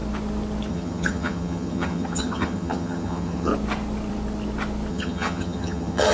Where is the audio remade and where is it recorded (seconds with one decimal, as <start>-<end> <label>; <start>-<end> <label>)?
0.0-0.7 recorded; 0.7-3.5 remade; 3.5-4.9 recorded; 4.9-6.1 remade